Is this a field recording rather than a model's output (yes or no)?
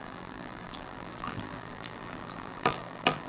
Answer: no